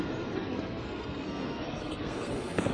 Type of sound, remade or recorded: remade